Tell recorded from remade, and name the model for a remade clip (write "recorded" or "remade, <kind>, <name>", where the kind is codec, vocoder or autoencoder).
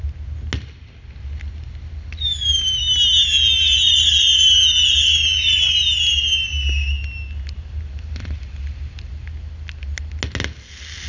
recorded